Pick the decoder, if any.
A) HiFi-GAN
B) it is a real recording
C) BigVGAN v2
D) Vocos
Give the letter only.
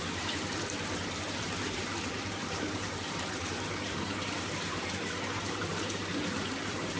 C